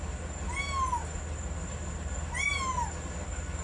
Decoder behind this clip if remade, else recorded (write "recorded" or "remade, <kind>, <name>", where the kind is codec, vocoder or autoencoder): recorded